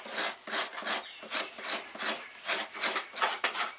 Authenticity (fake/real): real